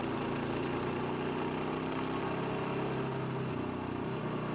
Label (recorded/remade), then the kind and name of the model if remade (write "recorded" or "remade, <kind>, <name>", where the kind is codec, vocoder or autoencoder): recorded